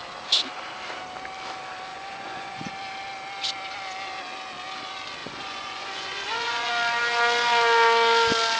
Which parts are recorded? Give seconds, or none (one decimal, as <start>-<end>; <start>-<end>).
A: 0.0-1.9; 2.7-5.2; 6.7-8.6